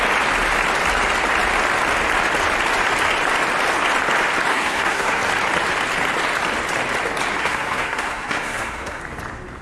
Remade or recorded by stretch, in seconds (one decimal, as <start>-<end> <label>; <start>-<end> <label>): 0.0-4.5 recorded; 4.5-5.2 remade; 5.2-7.4 recorded; 7.4-9.0 remade; 9.0-9.6 recorded